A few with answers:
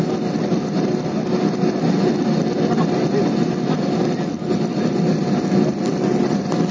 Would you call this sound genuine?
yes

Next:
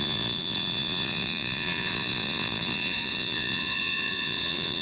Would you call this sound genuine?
no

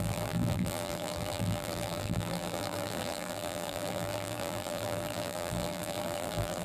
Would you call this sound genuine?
no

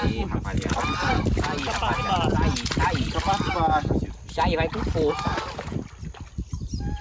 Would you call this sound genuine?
yes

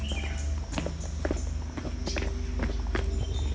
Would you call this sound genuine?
yes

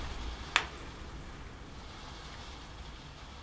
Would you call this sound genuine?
yes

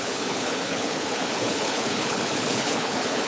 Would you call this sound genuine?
no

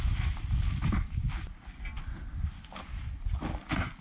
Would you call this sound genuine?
yes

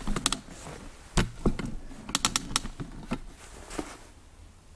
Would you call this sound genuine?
yes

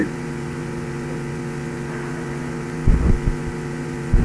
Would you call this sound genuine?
no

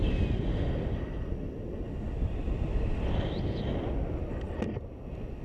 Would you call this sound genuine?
yes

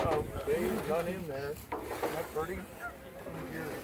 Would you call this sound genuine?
yes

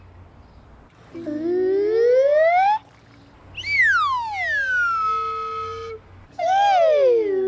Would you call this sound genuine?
yes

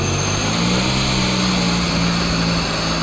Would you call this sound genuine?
yes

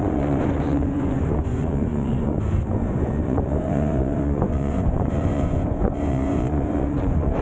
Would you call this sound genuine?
no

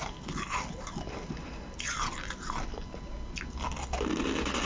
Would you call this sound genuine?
yes